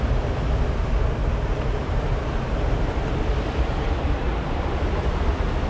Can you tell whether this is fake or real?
fake